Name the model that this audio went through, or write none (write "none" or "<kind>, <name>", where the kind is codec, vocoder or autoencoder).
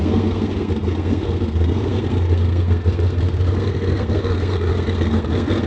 codec, SNAC